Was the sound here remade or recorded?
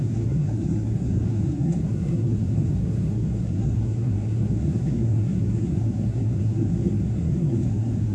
remade